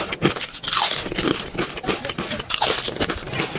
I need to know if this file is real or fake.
fake